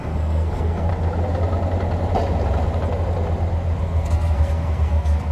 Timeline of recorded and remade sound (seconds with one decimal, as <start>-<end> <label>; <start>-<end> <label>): 0.0-0.9 remade; 0.9-3.8 recorded; 3.8-5.3 remade